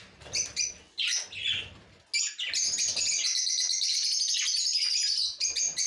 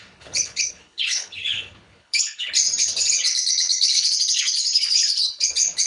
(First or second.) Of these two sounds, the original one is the first